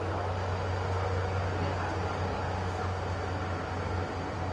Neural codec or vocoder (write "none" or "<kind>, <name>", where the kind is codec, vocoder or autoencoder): none